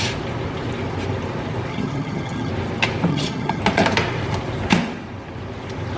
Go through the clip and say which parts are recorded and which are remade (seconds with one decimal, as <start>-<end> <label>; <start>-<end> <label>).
0.0-1.7 recorded; 1.7-2.5 remade; 2.5-3.1 recorded; 3.1-3.6 remade; 3.6-6.0 recorded